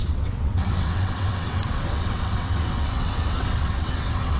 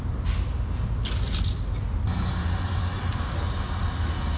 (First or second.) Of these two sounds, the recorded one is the second